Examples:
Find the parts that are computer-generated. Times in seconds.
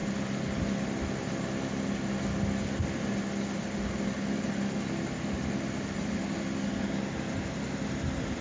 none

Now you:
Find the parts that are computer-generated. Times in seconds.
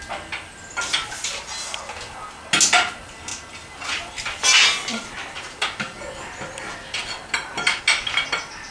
none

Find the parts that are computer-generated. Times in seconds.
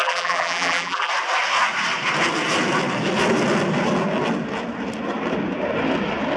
0.0-1.1 (vocoder, BigVGAN v2)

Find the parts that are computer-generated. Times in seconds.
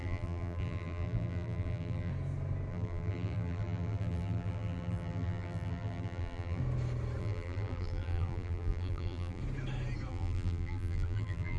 0.0-2.1 (vocoder, BigVGAN v2); 2.7-6.6; 7.2-9.4; 10.1-11.6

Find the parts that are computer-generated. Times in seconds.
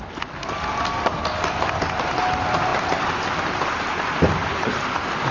2.7-3.6 (vocoder, BigVGAN v2)